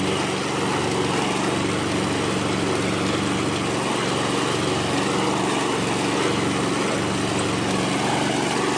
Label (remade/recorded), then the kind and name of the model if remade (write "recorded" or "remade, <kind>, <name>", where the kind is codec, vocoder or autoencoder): recorded